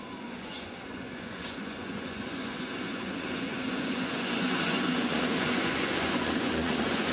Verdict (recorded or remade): remade